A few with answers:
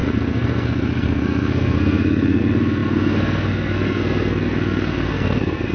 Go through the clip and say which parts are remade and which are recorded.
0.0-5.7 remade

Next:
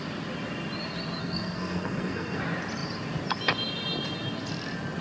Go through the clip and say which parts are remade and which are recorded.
0.0-1.2 recorded; 1.2-2.4 remade; 2.4-5.0 recorded